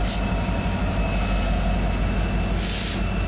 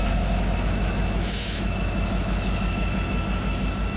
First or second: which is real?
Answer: first